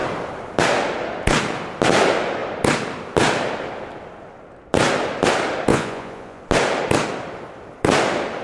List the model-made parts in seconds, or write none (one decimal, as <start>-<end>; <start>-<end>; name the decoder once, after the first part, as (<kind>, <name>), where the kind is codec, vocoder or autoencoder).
5.7-6.4 (vocoder, Vocos)